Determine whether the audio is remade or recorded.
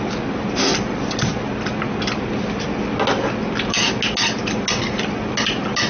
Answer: recorded